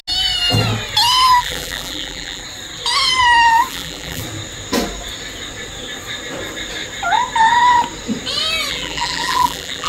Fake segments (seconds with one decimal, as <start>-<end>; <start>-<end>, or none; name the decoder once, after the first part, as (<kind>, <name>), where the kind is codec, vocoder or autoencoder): 1.4-2.4 (vocoder, BigVGAN v2); 3.7-4.2; 8.7-9.9